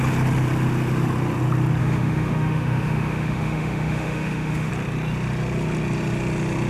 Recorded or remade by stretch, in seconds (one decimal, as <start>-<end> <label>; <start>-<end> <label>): 0.0-1.8 recorded; 1.8-4.7 remade; 4.7-6.7 recorded